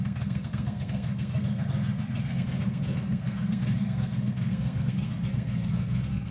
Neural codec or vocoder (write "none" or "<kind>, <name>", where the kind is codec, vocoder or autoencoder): codec, SNAC